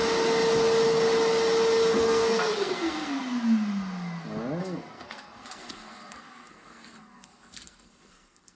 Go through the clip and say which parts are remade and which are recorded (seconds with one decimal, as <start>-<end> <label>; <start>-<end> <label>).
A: 0.0-2.0 recorded; 2.0-3.2 remade; 3.2-4.6 recorded; 4.6-8.5 remade